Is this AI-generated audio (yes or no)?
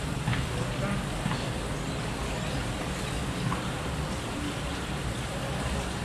no